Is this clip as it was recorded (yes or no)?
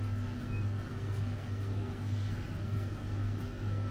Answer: no